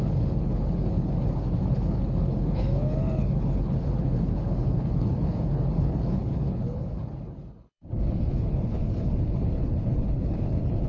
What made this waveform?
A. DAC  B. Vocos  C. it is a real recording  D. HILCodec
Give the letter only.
D